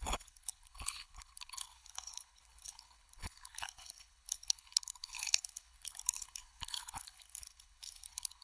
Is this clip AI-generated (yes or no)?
yes